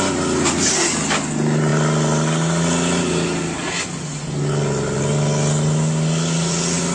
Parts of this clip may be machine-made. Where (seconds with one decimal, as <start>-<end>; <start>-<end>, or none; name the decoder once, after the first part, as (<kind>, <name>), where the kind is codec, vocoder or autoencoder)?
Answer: none

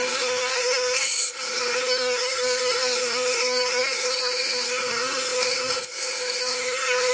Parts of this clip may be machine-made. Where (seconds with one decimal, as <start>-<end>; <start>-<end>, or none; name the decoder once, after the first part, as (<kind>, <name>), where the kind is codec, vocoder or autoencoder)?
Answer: 0.0-7.1 (codec, SNAC)